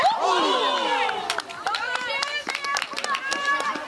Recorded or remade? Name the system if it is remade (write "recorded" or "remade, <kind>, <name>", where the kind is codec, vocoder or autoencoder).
recorded